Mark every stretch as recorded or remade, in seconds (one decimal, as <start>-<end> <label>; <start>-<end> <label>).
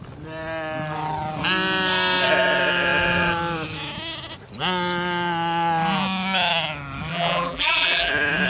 0.0-7.1 recorded; 7.1-8.1 remade; 8.1-8.5 recorded